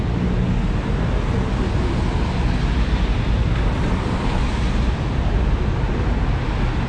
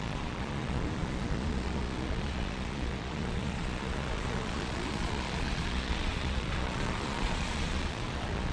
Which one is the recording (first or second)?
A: first